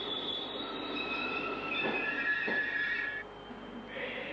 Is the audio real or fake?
real